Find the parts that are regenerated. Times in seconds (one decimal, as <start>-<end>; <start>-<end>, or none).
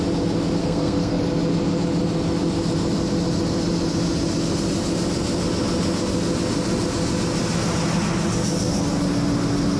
0.6-1.2